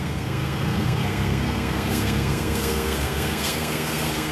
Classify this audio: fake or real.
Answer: fake